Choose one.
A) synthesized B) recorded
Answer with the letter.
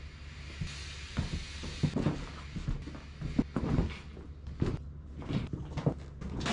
B